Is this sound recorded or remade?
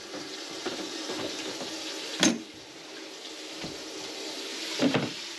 recorded